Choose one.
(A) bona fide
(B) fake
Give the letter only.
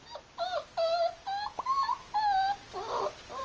A